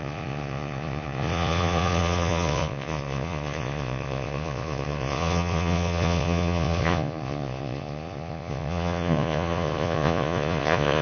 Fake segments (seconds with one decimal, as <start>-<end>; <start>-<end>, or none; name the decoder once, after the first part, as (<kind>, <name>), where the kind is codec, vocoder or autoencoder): 0.0-11.0 (vocoder, Vocos)